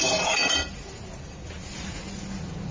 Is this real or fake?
real